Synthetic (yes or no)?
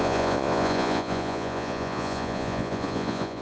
yes